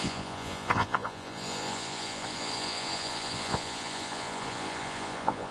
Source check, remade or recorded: remade